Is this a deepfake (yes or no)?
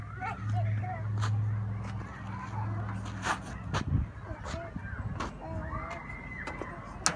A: no